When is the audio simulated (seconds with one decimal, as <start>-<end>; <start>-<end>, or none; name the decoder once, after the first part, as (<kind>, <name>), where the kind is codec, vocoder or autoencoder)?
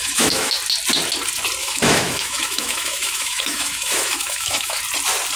0.0-0.5 (autoencoder, DAC-VAE); 1.6-4.8